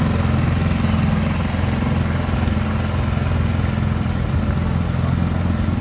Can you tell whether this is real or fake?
real